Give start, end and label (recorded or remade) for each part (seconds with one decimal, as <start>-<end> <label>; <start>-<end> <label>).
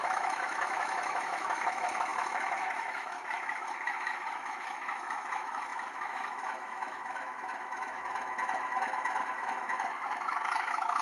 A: 0.0-11.0 remade